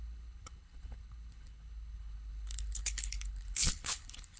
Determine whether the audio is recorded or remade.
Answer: remade